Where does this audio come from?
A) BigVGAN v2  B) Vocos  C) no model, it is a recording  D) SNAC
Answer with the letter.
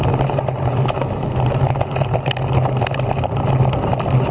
C